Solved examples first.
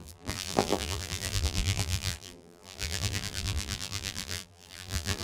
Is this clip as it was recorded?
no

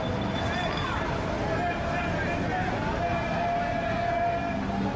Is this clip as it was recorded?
yes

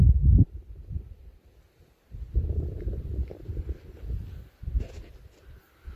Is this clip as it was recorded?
no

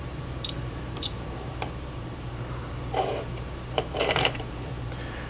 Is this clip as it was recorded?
no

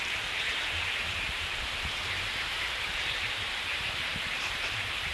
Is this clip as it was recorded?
no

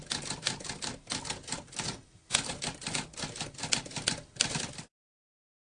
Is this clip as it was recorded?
yes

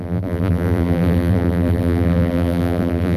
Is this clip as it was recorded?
no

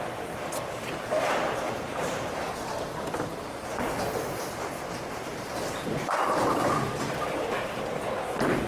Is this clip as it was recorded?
no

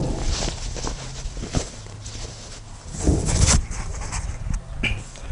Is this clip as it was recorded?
yes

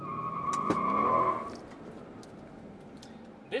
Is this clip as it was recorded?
yes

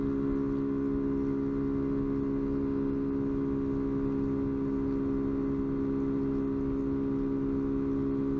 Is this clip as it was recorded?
yes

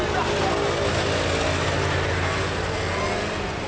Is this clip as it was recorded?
yes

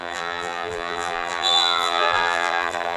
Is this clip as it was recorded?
no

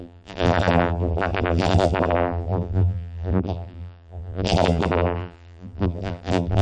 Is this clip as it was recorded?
no